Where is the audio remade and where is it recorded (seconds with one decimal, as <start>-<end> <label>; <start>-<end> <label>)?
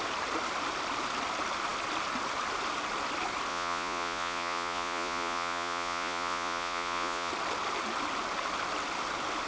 0.0-3.5 recorded; 3.5-7.3 remade; 7.3-9.5 recorded